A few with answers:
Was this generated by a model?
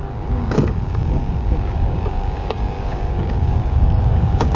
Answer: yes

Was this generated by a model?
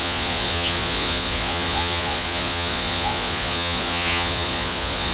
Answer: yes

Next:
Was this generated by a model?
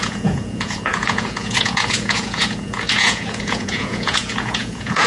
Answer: yes